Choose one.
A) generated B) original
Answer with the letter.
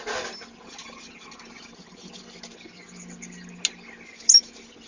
B